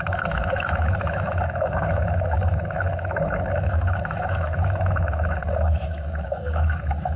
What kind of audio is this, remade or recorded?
remade